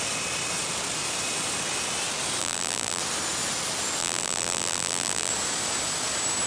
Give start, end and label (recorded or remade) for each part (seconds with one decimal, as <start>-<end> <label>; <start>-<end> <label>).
0.0-2.4 recorded; 2.4-3.0 remade; 3.0-4.0 recorded; 4.0-5.3 remade; 5.3-6.5 recorded